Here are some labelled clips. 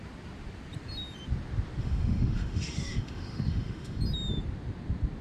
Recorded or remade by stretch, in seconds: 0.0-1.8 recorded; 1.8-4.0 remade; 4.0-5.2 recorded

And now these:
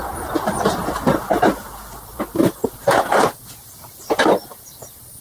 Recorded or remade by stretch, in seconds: 0.0-5.2 recorded

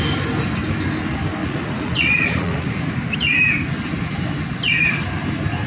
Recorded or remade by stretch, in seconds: 0.0-1.4 recorded; 1.4-2.7 remade; 2.7-5.7 recorded

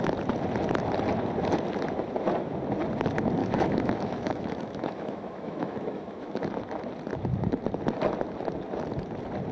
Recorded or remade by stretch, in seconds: 0.0-3.4 recorded; 3.4-6.5 remade; 6.5-9.5 recorded

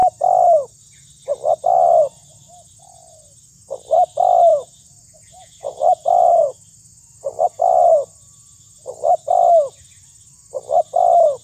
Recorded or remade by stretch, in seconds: 0.0-4.5 recorded; 4.5-7.4 remade; 7.4-11.4 recorded